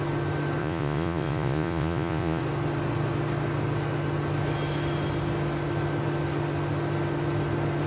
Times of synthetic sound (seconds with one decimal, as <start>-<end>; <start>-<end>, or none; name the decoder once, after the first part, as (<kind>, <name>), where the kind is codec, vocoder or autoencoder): 0.6-2.4 (vocoder, Vocos)